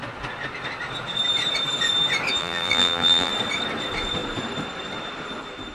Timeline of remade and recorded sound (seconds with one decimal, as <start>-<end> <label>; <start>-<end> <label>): 0.0-2.4 recorded; 2.4-3.3 remade; 3.3-5.7 recorded